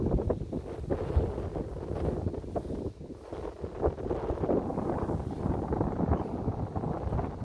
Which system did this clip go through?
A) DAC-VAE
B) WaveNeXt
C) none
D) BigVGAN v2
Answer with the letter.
C